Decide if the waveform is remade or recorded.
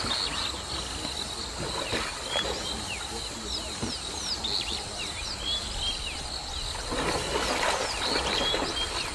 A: recorded